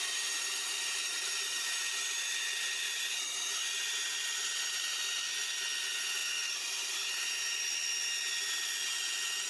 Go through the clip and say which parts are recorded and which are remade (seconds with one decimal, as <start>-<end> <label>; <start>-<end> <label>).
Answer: 0.0-9.5 recorded